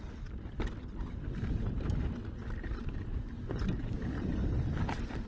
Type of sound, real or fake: real